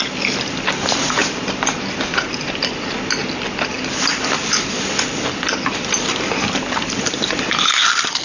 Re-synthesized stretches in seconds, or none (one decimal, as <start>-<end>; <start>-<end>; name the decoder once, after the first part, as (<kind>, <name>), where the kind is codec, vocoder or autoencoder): none